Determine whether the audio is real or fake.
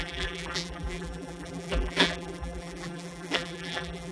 fake